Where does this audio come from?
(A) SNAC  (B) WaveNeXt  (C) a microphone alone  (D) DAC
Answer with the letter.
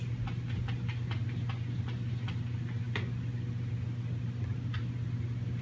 C